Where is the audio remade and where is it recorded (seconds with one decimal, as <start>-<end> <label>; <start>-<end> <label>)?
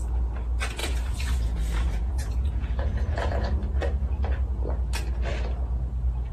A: 0.0-0.8 recorded; 0.8-3.7 remade; 3.7-6.3 recorded